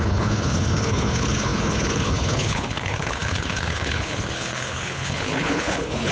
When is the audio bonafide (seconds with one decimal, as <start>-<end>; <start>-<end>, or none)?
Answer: none